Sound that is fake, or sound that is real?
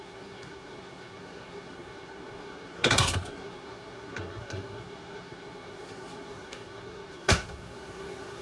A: fake